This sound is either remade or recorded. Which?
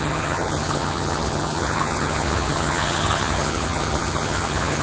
remade